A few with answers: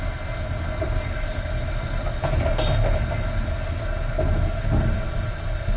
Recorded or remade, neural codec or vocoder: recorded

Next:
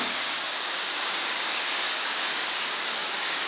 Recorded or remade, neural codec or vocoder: remade, codec, DAC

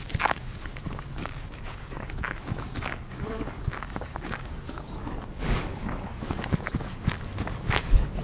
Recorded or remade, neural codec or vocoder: remade, codec, DAC